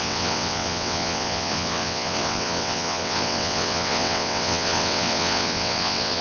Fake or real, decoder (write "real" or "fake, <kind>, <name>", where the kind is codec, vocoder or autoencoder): fake, vocoder, WaveNeXt